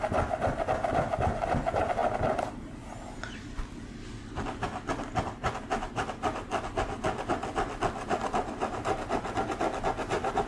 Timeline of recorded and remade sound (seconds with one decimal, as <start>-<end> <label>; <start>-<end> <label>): 0.0-10.5 recorded